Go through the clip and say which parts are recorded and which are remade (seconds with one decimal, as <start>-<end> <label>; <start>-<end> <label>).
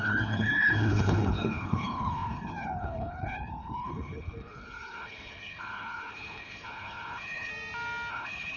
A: 0.0-7.5 remade; 7.5-8.1 recorded; 8.1-8.6 remade